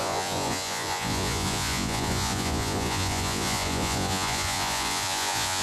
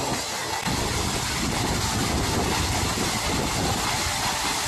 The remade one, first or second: first